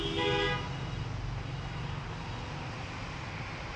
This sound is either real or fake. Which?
real